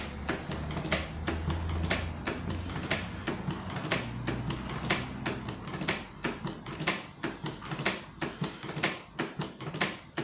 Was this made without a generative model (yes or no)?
yes